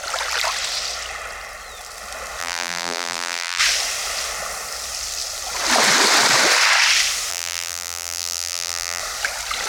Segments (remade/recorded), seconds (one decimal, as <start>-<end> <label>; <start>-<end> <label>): 0.0-2.4 recorded; 2.4-3.6 remade; 3.6-7.3 recorded; 7.3-9.0 remade; 9.0-9.7 recorded